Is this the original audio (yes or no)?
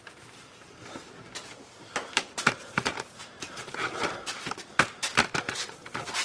no